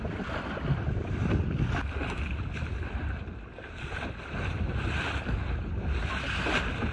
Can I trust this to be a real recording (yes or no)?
yes